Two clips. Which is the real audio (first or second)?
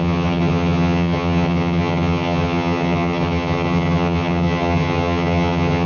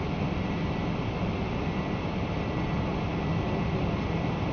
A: second